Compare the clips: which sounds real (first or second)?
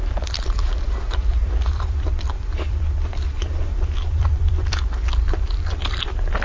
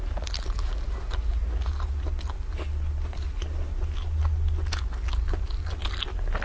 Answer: second